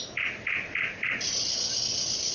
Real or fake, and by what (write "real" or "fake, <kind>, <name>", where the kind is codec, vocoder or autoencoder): real